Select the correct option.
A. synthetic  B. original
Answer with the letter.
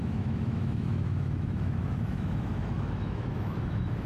A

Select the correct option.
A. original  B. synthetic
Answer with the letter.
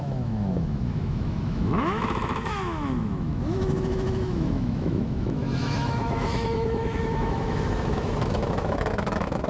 B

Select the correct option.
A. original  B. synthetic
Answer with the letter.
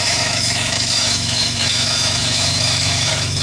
B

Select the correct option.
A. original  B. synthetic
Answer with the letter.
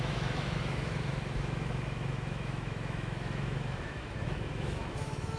B